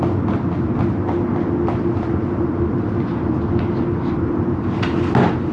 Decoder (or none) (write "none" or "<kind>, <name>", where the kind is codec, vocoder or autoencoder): none